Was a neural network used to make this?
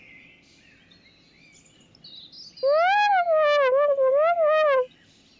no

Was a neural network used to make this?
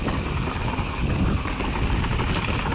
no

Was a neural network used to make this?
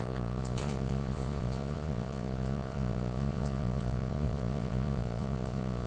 yes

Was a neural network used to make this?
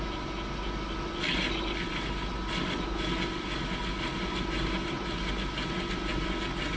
no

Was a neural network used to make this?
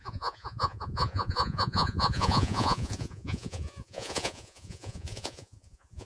yes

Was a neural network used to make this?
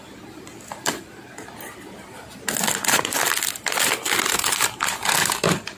no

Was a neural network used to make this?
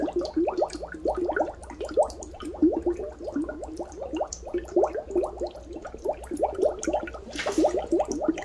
no